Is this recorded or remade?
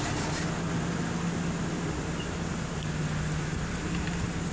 recorded